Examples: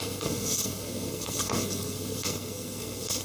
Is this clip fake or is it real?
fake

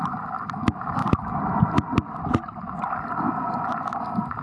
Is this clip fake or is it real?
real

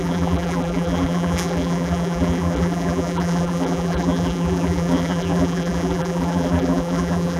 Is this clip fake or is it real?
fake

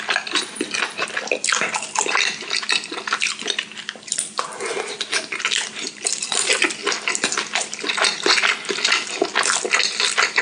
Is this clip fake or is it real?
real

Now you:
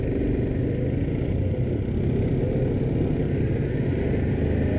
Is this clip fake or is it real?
real